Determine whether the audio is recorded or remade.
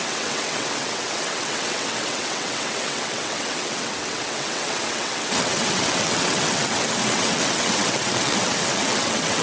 remade